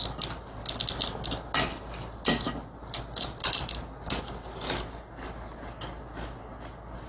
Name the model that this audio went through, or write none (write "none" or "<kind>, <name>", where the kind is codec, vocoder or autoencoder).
none